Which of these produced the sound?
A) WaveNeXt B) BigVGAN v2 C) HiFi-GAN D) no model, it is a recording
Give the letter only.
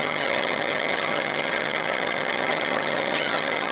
C